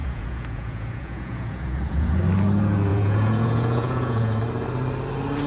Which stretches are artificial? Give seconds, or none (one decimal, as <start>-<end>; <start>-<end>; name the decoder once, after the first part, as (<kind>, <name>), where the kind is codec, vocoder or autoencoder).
0.0-2.2 (vocoder, Vocos); 2.9-4.4